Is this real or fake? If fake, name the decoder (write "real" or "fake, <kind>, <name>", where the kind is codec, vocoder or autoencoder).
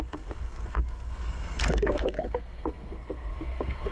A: fake, codec, SNAC